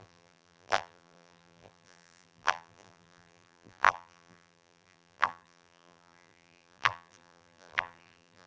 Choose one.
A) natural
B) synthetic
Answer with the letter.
B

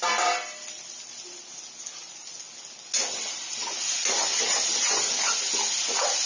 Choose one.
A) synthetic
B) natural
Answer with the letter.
B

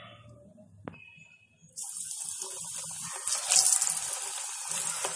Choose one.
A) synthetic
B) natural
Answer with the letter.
B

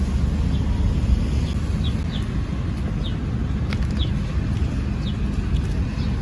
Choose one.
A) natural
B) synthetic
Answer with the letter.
A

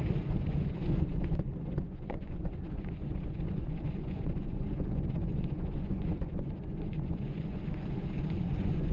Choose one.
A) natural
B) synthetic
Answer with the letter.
B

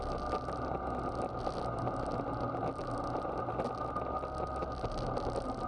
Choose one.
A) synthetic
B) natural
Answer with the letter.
B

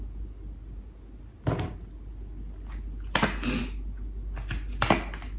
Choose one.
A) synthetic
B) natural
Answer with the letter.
B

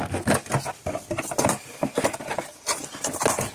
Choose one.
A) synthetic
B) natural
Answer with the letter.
B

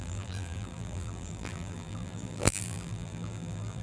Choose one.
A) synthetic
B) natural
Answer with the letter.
A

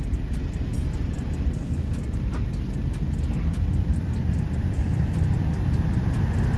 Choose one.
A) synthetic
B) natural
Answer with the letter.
B